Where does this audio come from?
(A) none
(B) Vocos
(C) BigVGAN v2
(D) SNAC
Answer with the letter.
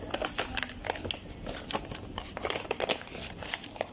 A